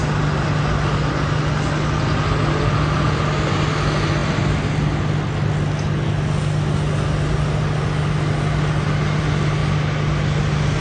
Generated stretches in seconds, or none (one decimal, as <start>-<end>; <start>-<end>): none